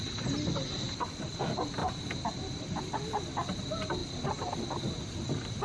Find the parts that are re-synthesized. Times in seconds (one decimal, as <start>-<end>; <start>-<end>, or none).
none